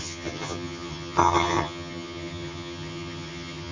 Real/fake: fake